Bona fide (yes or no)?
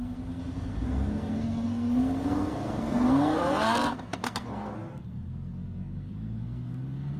no